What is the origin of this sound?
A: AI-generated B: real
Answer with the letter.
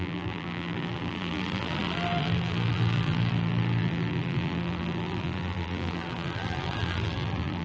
A